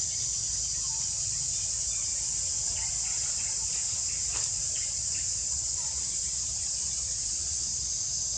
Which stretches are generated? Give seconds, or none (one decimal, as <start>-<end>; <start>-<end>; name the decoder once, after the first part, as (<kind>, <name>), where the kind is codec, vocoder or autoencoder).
5.4-7.9 (vocoder, Vocos)